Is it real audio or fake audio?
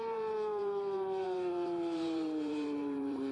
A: fake